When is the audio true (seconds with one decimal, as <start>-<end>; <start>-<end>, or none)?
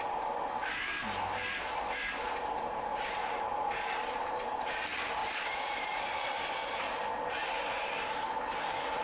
0.0-2.9; 4.7-5.2; 6.4-9.0